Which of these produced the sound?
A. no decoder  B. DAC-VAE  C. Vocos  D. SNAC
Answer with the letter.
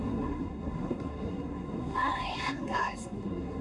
D